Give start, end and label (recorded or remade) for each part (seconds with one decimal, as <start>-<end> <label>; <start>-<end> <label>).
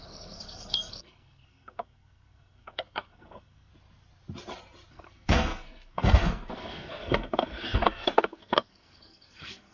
0.0-3.7 remade; 3.7-4.9 recorded; 4.9-9.7 remade